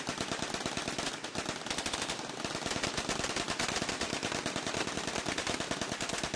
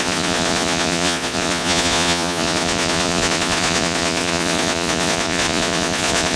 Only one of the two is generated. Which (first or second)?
second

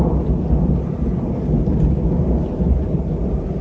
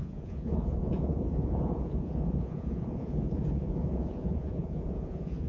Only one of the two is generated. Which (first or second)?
second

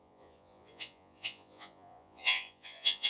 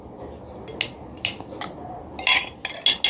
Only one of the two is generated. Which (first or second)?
first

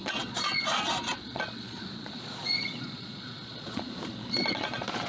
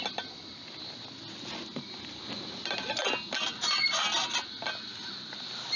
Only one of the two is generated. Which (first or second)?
first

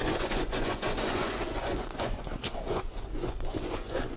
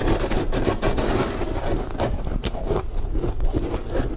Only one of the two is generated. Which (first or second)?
first